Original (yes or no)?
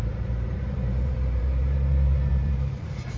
no